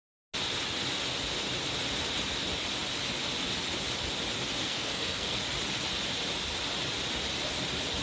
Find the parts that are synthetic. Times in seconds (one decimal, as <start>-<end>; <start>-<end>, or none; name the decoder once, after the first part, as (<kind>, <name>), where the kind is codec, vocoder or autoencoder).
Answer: 4.6-5.4 (codec, SNAC)